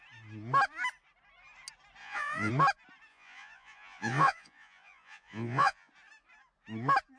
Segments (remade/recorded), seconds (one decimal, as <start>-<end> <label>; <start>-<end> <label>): 0.0-2.0 recorded; 2.0-2.5 remade; 2.5-3.1 recorded; 3.1-5.9 remade; 5.9-7.2 recorded